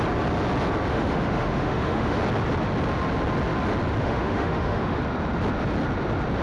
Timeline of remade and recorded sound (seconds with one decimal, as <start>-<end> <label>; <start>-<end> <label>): 0.0-0.9 recorded; 0.9-2.2 remade; 2.2-4.0 recorded; 4.0-5.0 remade; 5.0-6.4 recorded